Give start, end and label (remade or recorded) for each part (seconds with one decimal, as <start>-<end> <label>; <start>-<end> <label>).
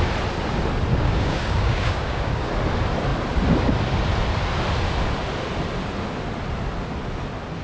0.0-0.9 recorded; 0.9-2.5 remade; 2.5-7.6 recorded